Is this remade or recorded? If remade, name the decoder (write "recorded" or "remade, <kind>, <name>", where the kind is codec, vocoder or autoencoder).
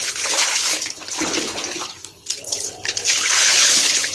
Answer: remade, codec, HILCodec